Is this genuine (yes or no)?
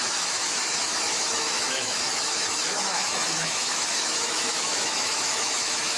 no